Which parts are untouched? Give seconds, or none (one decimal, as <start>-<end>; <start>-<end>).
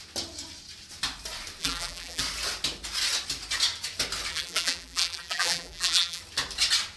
0.0-1.6; 2.2-4.3; 6.2-7.0